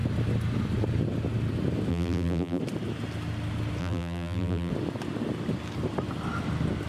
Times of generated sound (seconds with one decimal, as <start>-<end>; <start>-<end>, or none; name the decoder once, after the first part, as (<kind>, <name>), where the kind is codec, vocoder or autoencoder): 1.9-2.6 (vocoder, BigVGAN v2); 3.8-4.7